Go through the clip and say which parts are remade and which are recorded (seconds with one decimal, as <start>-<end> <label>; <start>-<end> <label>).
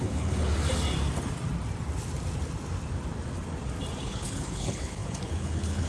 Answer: 0.0-0.5 remade; 0.5-4.0 recorded; 4.0-5.9 remade